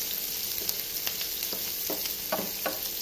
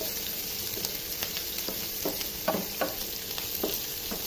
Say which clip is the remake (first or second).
second